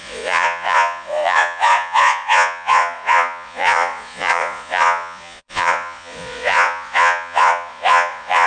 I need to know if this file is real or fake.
fake